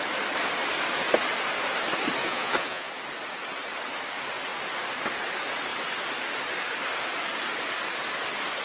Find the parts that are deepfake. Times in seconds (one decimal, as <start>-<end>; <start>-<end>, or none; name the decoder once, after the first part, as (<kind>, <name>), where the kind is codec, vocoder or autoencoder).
2.2-2.9 (vocoder, Vocos)